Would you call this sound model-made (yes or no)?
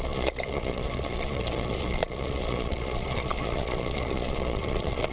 yes